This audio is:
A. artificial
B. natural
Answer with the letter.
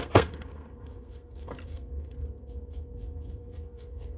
A